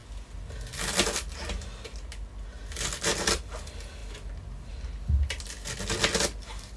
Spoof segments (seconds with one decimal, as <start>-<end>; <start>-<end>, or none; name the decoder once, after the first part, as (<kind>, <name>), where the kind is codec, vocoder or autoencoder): none